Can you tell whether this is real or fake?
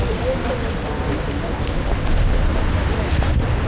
real